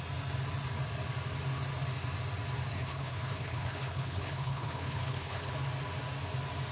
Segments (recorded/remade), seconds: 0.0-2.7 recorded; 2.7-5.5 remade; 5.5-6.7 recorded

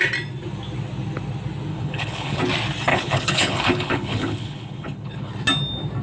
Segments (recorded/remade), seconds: 0.0-1.7 recorded; 1.7-2.4 remade; 2.4-2.9 recorded; 2.9-5.3 remade; 5.3-6.0 recorded

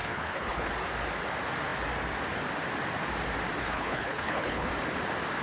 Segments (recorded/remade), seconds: 0.0-0.7 remade; 0.7-3.6 recorded; 3.6-4.7 remade; 4.7-5.4 recorded

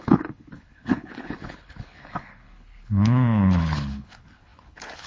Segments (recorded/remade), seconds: 0.0-5.1 remade